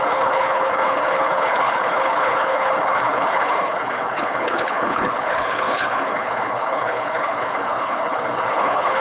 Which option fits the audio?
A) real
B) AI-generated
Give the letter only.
B